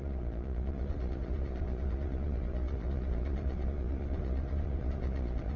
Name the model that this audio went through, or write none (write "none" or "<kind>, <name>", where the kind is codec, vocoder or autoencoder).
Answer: vocoder, Vocos